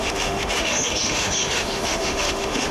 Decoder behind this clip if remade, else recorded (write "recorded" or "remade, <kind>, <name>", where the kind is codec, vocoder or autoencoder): remade, autoencoder, DAC-VAE